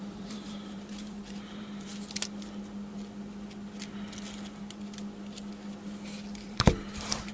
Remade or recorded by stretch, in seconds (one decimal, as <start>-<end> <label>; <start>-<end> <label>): 0.0-1.9 remade; 1.9-6.3 recorded; 6.3-7.3 remade